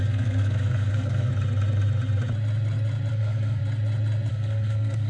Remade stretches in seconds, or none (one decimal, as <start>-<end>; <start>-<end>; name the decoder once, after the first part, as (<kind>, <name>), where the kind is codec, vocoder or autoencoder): 0.0-1.3 (codec, SNAC); 3.1-3.6; 4.3-5.1